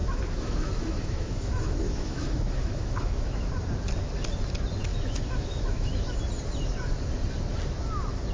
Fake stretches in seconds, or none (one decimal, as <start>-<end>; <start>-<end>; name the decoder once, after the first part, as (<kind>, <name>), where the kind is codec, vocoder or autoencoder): 0.0-3.5 (autoencoder, DAC-VAE); 4.9-6.2